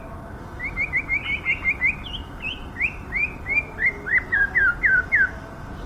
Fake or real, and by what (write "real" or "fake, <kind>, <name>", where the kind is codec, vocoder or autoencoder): real